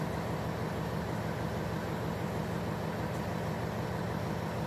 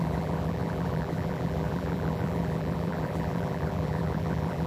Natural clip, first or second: first